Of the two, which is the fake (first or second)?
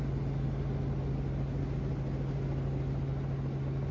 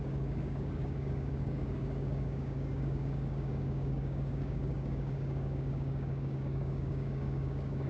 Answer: second